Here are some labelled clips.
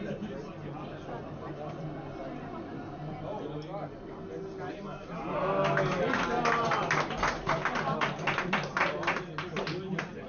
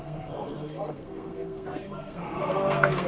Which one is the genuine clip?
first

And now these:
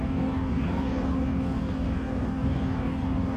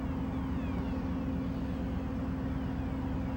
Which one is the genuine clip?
second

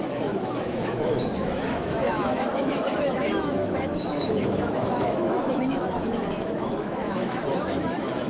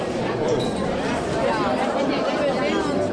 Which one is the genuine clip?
second